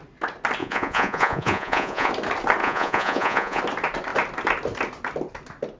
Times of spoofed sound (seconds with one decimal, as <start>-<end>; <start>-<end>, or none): 0.6-2.1; 2.6-3.6